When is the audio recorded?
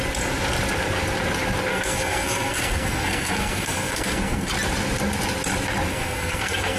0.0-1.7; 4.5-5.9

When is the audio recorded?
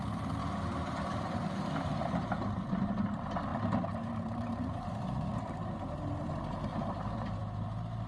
0.0-0.4; 3.0-3.5; 4.9-6.7; 7.4-8.1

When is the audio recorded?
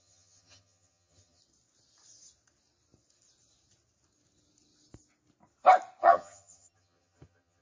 1.4-6.0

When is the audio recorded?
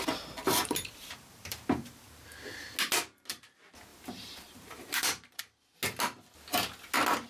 0.0-0.6; 2.2-3.9; 5.4-7.3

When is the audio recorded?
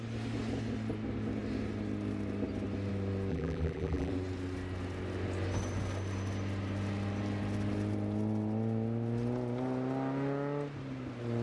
0.0-3.3; 4.1-11.4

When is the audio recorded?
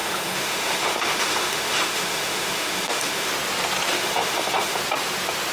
3.3-3.9; 4.8-5.5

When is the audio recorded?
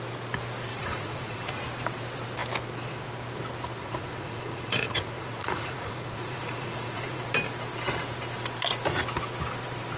0.0-0.7; 1.6-3.8; 7.2-10.0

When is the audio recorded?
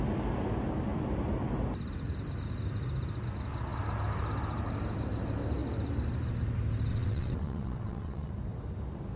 0.0-6.9; 8.3-9.2